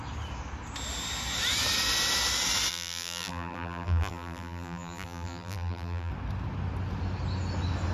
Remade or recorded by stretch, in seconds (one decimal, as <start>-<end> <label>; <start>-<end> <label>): 0.0-2.7 recorded; 2.7-6.1 remade; 6.1-7.9 recorded